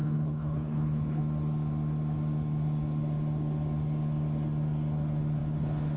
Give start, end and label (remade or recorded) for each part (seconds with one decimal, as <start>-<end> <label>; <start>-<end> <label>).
0.0-1.2 remade; 1.2-6.0 recorded